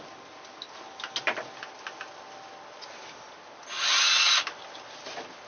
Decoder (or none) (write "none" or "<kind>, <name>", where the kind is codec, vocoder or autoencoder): none